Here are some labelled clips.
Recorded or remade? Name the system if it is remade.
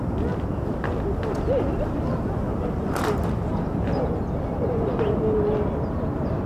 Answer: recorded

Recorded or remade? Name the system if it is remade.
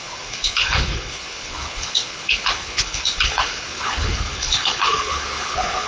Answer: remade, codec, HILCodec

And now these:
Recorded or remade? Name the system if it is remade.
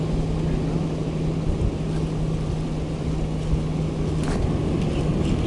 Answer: recorded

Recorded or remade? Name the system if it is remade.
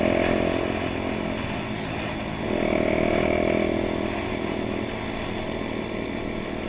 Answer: recorded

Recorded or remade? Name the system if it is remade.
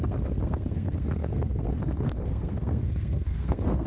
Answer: remade, codec, SNAC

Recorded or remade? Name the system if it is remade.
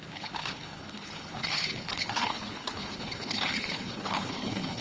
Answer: remade, codec, HILCodec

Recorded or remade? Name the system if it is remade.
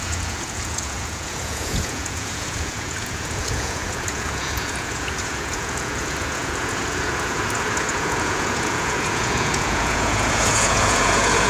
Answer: remade, vocoder, Vocos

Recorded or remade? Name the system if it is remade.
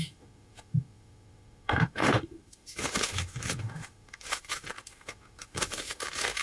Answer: remade, autoencoder, DAC-VAE